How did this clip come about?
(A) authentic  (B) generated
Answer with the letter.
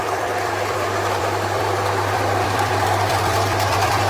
B